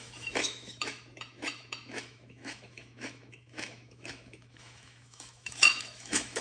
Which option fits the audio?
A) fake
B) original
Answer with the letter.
A